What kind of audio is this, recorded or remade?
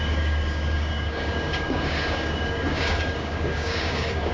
remade